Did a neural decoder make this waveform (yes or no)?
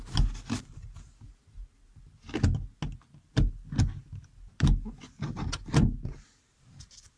no